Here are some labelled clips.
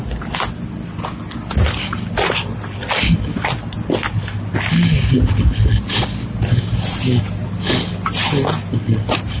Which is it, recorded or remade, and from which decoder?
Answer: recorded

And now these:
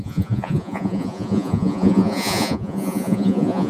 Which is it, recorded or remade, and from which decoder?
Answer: remade, vocoder, Vocos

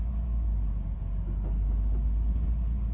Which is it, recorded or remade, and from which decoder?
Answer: recorded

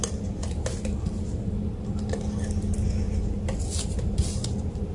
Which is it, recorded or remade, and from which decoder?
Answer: recorded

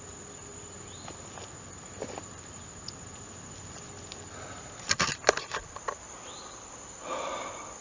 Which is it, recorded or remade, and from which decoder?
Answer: recorded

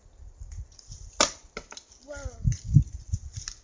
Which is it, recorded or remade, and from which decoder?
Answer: recorded